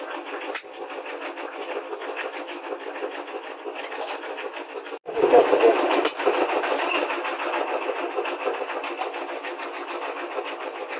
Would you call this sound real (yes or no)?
yes